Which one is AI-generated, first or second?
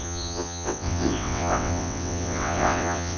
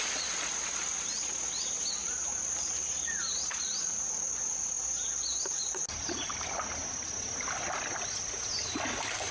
first